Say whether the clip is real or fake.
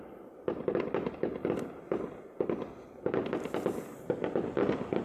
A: real